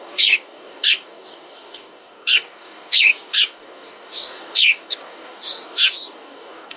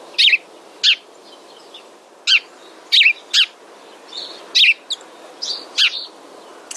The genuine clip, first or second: second